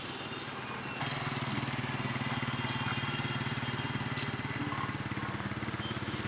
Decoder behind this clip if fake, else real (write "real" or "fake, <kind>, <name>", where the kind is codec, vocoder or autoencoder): real